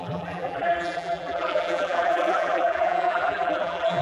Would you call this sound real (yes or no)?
no